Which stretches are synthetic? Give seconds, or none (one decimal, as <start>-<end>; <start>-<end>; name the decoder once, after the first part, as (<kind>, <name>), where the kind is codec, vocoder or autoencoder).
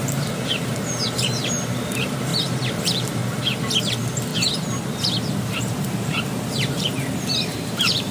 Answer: 0.0-2.3 (vocoder, BigVGAN v2); 2.8-3.2; 3.8-4.3; 5.4-8.1